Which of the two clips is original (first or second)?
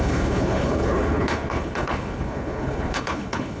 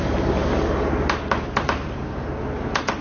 second